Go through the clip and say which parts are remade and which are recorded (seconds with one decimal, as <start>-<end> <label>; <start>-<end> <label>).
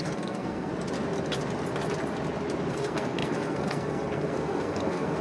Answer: 0.0-0.7 remade; 0.7-2.7 recorded; 2.7-5.2 remade